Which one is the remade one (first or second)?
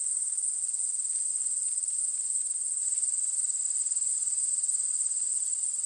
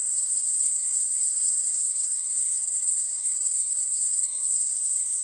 second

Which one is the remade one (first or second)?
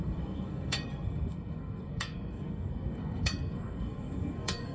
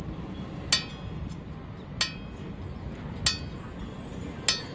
first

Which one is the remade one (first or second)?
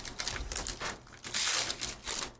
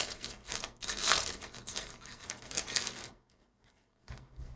second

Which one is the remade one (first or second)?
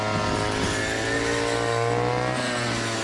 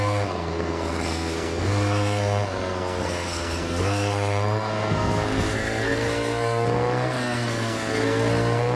second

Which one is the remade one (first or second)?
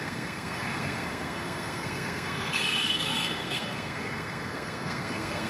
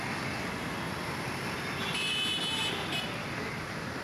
first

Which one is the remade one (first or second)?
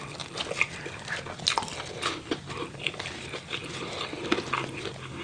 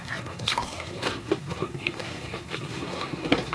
second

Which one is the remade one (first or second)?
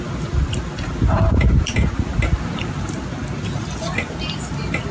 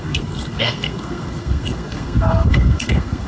second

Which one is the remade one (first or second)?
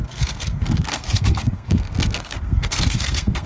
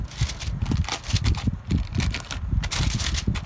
first